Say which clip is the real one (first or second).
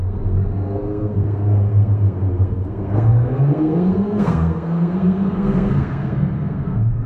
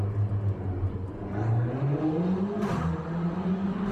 second